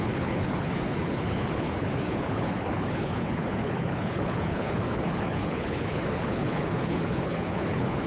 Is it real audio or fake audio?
fake